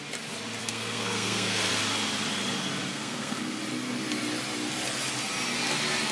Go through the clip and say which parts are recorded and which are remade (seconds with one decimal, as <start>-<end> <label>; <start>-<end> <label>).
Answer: 0.0-0.6 recorded; 0.6-1.7 remade; 1.7-2.9 recorded; 2.9-3.6 remade; 3.6-6.1 recorded